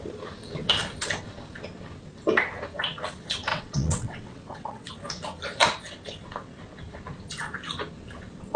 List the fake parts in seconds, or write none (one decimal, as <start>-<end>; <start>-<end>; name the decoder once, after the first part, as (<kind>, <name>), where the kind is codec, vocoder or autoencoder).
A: 3.5-4.9 (vocoder, WaveNeXt)